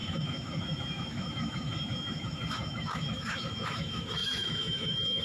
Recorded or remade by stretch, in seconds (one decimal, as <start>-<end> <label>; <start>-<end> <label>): 0.0-5.2 remade